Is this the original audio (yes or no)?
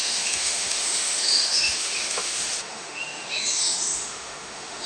no